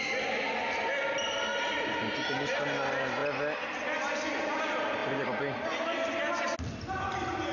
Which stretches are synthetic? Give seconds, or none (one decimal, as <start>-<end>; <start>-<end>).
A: none